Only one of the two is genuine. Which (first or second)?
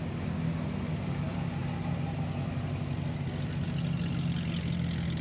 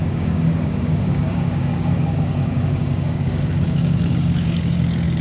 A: first